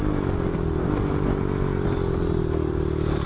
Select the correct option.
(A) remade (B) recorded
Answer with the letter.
B